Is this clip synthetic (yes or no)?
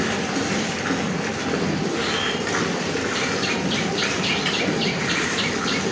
no